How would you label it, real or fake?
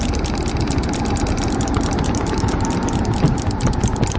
real